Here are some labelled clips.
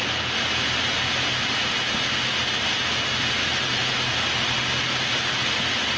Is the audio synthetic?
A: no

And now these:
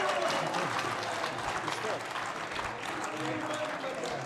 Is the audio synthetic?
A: no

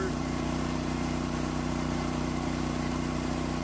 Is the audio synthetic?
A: yes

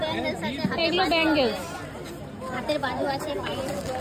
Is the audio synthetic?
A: no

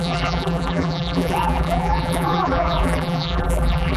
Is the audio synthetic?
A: yes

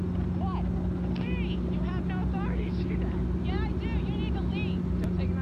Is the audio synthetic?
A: no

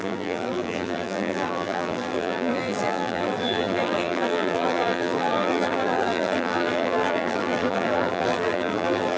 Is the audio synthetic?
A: yes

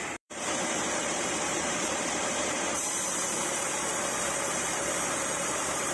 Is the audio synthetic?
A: yes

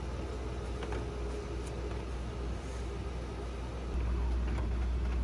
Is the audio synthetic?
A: no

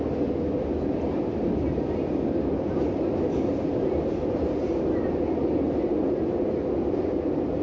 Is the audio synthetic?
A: no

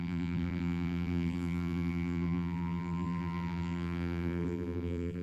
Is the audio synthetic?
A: yes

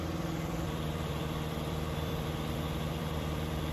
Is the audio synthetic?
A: yes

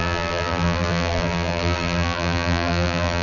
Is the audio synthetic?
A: yes